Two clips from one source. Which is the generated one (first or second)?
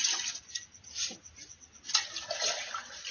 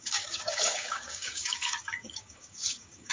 second